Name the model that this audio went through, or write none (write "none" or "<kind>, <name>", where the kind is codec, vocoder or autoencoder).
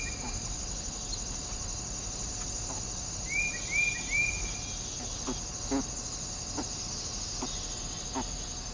none